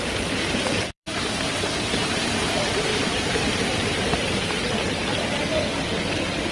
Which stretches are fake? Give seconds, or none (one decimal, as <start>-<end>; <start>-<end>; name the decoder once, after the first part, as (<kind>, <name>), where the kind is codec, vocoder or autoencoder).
0.0-4.6 (vocoder, BigVGAN v2)

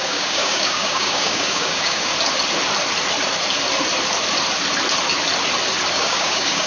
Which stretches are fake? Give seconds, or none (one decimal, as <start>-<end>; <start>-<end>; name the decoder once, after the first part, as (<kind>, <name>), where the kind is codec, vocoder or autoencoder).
0.0-2.1 (codec, DAC); 5.9-6.7

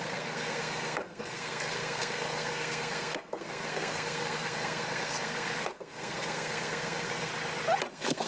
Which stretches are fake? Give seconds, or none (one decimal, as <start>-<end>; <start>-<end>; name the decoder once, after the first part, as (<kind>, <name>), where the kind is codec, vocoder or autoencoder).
0.0-7.3 (codec, SNAC); 7.9-8.3

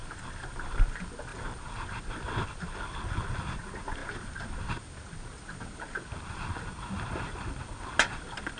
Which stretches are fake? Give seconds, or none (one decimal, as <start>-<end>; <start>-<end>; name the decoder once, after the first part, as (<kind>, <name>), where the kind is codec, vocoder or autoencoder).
none

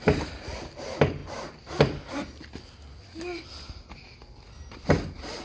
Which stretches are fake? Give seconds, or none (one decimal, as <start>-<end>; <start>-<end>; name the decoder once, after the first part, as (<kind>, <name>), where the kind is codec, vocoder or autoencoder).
none

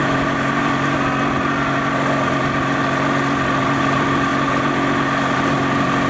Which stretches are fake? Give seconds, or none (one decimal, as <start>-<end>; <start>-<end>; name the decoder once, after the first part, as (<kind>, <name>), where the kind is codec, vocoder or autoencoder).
none

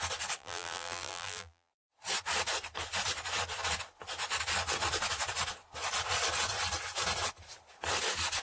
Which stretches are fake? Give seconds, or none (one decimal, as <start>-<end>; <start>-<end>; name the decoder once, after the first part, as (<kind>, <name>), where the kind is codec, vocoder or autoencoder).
0.4-1.7 (vocoder, BigVGAN v2)